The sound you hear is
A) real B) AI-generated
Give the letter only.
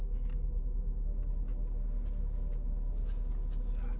A